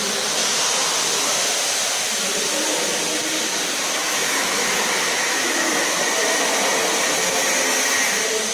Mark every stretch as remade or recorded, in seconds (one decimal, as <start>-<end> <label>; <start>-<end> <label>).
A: 0.0-4.3 recorded; 4.3-6.0 remade; 6.0-8.5 recorded